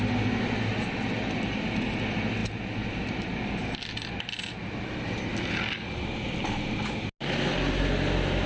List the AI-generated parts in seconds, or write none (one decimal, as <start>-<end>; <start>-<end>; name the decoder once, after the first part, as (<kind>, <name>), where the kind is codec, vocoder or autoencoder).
none